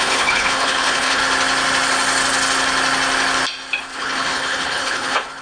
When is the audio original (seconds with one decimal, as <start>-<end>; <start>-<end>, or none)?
1.2-3.8